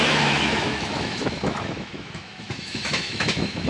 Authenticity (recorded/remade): remade